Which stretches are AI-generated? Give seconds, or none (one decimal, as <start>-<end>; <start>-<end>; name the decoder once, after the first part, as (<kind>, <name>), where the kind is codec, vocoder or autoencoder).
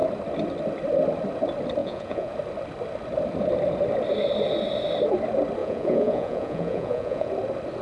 1.8-2.3 (vocoder, Vocos); 5.6-7.3